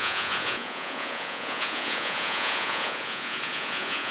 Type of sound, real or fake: fake